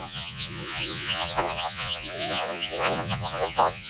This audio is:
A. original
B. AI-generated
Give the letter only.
B